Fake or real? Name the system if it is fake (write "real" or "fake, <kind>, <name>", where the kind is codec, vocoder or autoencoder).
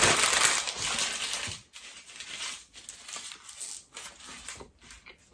real